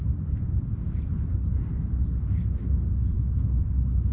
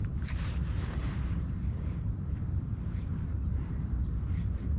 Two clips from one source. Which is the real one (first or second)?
first